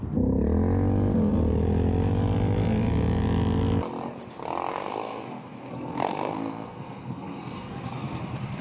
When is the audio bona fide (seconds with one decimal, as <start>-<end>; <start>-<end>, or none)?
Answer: 0.0-4.7; 8.2-8.6